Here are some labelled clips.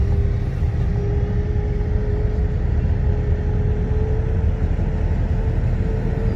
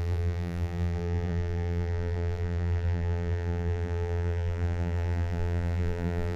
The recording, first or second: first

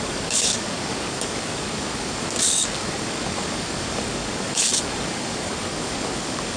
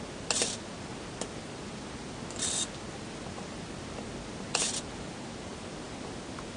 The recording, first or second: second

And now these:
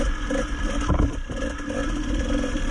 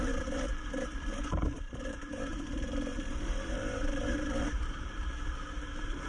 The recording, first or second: first